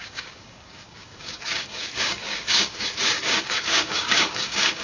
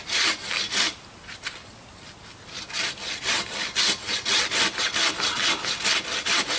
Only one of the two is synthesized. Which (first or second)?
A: first